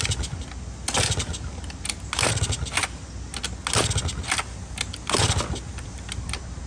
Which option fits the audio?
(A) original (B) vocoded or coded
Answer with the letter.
A